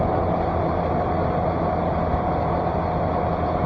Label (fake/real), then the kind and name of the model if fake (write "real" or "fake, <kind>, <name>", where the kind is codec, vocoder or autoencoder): real